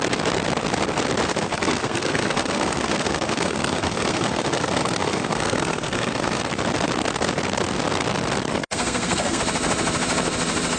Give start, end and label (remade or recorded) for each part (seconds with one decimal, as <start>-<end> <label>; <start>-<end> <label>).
0.0-1.3 recorded; 1.3-6.4 remade; 6.4-8.5 recorded; 8.5-9.4 remade; 9.4-10.8 recorded